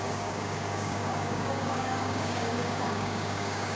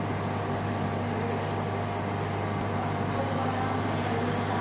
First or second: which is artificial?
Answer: first